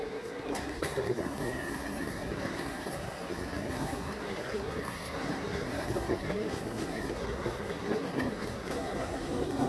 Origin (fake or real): fake